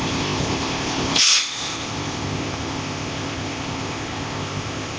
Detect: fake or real fake